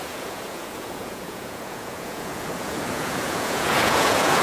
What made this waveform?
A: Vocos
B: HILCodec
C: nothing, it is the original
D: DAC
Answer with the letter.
A